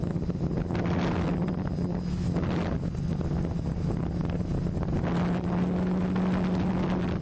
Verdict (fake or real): real